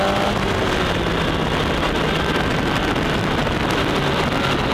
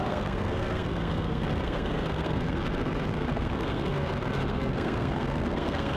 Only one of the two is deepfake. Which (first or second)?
second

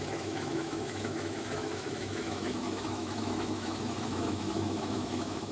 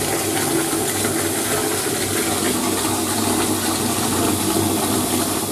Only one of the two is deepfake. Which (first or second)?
first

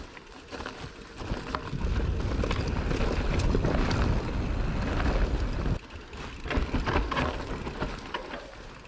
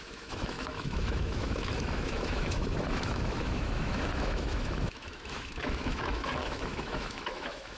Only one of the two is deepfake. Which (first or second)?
second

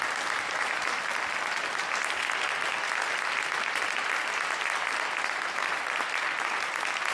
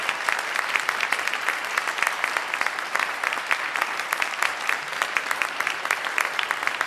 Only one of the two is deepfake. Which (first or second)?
second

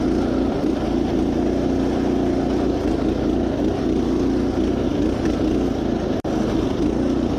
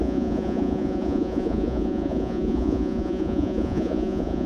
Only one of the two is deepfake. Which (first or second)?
second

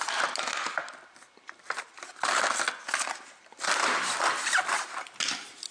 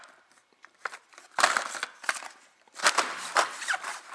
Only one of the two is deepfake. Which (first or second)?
second